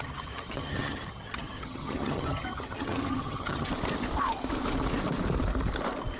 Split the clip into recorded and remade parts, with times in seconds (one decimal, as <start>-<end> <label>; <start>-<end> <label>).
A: 0.0-3.7 remade; 3.7-6.2 recorded